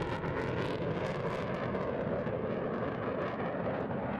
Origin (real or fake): real